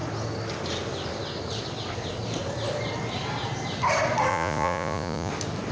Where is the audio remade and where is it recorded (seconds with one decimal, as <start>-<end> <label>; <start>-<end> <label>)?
0.0-4.3 recorded; 4.3-5.3 remade; 5.3-5.7 recorded